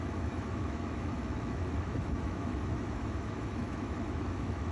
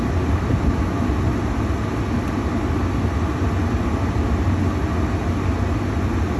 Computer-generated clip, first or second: first